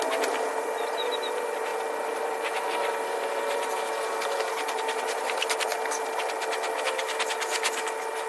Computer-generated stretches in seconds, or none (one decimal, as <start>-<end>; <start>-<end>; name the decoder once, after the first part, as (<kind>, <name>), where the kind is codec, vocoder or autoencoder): none